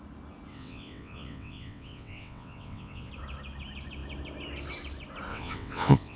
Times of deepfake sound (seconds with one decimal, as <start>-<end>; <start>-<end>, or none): 0.5-3.1; 5.3-6.2